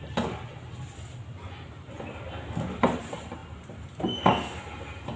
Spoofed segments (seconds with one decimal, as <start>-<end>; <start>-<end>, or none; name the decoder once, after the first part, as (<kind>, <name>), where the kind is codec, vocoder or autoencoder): none